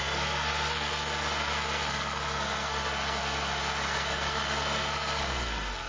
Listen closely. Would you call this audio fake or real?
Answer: fake